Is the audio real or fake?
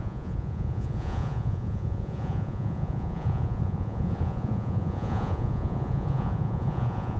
fake